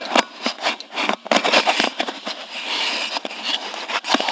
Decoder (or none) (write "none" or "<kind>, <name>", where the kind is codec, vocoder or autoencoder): none